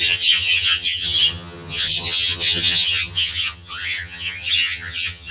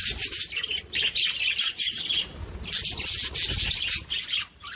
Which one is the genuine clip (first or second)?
second